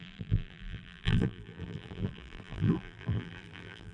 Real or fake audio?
fake